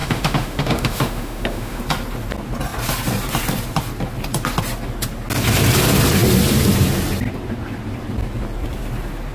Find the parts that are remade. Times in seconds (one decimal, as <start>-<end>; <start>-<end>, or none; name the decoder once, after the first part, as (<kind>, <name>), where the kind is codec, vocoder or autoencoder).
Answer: 0.0-1.8 (autoencoder, DAC-VAE)